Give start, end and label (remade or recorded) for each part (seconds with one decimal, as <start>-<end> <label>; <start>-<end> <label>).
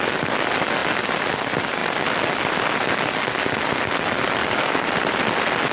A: 0.0-4.4 recorded; 4.4-4.9 remade; 4.9-5.7 recorded